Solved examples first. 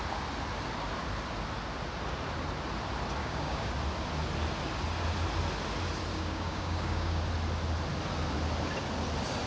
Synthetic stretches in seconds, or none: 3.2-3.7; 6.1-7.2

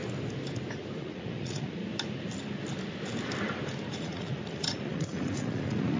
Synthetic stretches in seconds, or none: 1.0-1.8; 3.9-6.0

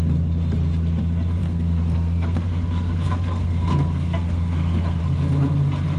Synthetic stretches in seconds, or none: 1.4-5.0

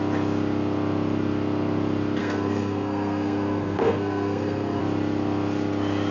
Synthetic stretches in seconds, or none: 2.2-4.8

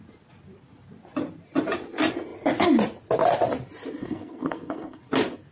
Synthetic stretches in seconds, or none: 4.0-5.0

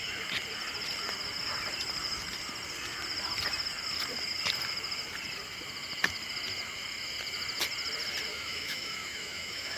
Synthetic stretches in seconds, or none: 8.3-9.8